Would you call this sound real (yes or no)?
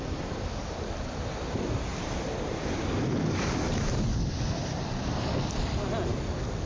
yes